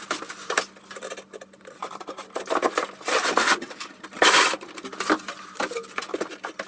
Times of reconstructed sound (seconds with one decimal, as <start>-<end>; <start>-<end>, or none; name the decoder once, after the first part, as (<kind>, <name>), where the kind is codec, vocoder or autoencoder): none